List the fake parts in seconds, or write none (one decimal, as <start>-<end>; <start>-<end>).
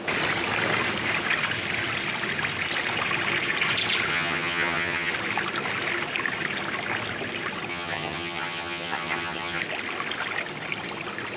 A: 4.1-5.1; 7.7-9.6